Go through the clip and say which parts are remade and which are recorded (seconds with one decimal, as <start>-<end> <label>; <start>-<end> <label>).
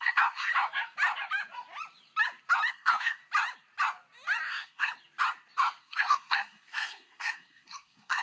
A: 0.0-0.5 remade; 0.5-2.7 recorded; 2.7-3.2 remade; 3.2-4.5 recorded; 4.5-4.9 remade; 4.9-5.8 recorded; 5.8-8.2 remade